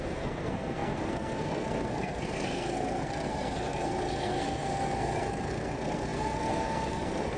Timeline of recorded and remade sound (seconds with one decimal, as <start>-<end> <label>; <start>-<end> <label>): 0.0-7.4 remade